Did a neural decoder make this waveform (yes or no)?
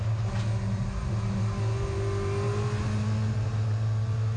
no